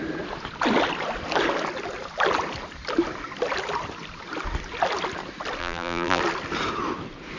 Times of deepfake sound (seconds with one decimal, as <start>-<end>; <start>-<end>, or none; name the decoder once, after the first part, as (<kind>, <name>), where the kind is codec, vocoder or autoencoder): 5.6-6.2 (vocoder, BigVGAN v2)